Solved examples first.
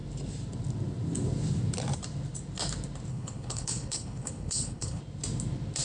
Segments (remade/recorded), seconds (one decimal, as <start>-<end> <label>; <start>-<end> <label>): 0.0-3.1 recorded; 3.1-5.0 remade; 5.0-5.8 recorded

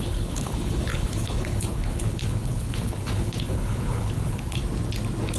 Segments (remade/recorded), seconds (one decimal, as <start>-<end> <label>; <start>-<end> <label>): 0.0-4.6 remade; 4.6-5.4 recorded

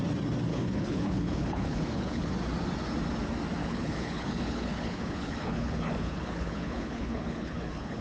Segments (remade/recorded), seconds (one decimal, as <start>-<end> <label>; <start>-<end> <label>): 0.0-0.5 recorded; 0.5-2.3 remade; 2.3-3.6 recorded; 3.6-8.0 remade

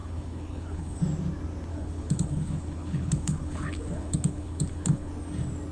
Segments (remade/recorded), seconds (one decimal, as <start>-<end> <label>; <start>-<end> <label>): 0.0-1.0 remade; 1.0-1.7 recorded; 1.7-5.1 remade; 5.1-5.7 recorded

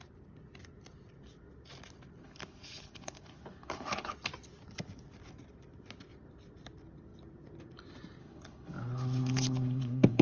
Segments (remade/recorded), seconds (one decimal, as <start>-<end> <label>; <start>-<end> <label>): 0.0-2.2 recorded; 2.2-4.1 remade; 4.1-8.2 recorded; 8.2-10.2 remade

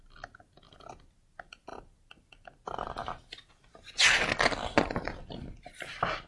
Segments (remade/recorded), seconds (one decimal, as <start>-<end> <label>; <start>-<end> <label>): 0.0-6.3 recorded

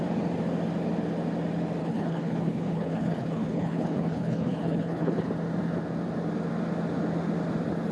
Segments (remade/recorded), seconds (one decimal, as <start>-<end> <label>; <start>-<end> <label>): 0.0-1.8 recorded; 1.8-5.3 remade; 5.3-7.9 recorded